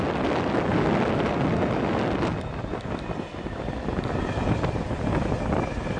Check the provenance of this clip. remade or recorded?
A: recorded